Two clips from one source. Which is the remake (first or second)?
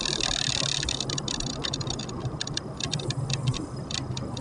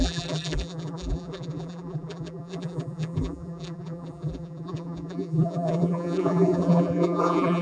second